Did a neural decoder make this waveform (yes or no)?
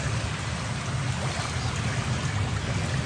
no